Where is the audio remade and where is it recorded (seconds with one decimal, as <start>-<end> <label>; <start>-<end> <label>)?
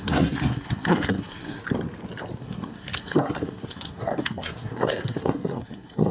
0.0-1.6 remade; 1.6-2.4 recorded; 2.4-6.1 remade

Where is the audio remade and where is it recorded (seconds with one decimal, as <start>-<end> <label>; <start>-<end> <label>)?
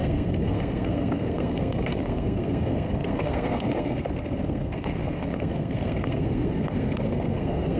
0.0-7.8 remade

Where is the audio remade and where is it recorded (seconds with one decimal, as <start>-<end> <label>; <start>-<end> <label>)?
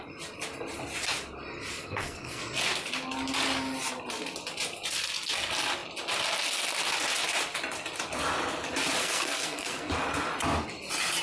0.0-1.8 recorded; 1.8-2.4 remade; 2.4-9.0 recorded; 9.0-9.9 remade; 9.9-11.2 recorded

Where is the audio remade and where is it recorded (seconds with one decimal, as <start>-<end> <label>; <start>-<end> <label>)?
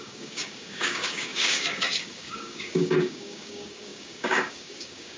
0.0-5.2 remade